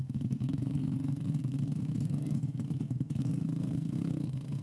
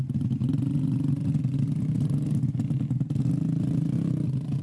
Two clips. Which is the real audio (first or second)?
second